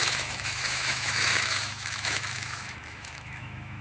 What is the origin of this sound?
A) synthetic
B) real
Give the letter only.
A